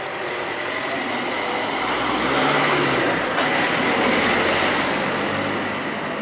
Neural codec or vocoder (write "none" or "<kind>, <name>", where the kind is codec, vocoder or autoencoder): none